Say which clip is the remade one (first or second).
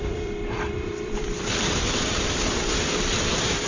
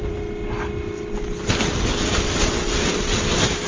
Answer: first